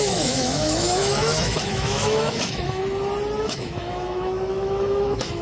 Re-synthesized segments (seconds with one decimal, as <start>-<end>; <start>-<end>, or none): 0.0-2.8; 3.4-5.4